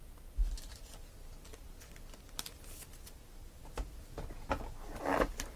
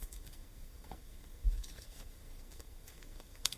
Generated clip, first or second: second